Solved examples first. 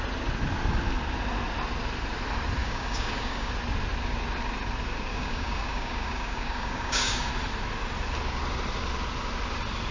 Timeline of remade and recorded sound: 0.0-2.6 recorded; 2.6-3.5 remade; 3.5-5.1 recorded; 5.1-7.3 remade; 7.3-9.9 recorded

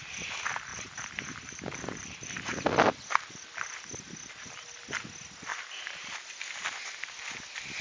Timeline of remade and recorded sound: 0.0-0.7 recorded; 0.7-4.7 remade; 4.7-5.5 recorded; 5.5-6.2 remade; 6.2-7.8 recorded

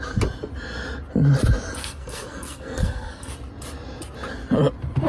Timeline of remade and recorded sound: 0.0-1.8 recorded; 1.8-3.3 remade; 3.3-5.1 recorded